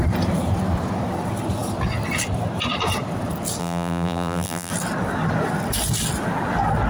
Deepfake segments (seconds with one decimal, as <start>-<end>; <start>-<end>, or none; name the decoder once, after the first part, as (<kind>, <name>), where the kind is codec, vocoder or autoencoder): 3.6-4.7 (vocoder, BigVGAN v2)